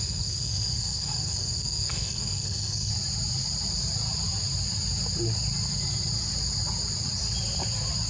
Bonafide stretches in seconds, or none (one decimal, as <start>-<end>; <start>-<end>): 2.9-8.1